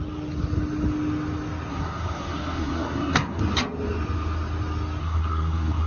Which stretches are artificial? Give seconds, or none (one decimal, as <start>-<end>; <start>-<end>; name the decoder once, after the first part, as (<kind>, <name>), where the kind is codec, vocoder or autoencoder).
1.7-3.4 (codec, SNAC); 5.0-5.9